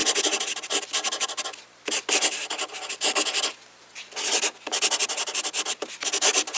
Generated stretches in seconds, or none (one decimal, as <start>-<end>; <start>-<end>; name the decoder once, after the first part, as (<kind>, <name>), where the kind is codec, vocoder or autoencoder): none